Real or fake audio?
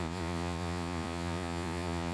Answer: fake